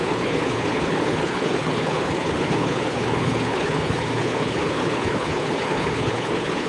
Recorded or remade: remade